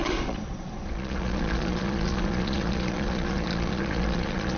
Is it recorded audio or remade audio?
remade